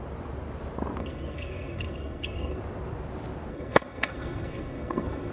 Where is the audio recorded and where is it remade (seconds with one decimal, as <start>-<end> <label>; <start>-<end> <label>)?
0.0-1.0 recorded; 1.0-2.6 remade; 2.6-3.5 recorded; 3.5-5.3 remade